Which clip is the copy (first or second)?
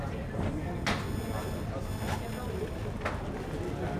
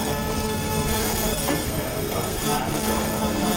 second